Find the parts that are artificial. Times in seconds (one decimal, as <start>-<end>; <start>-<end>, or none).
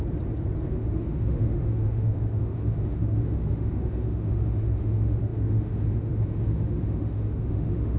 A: 0.7-8.0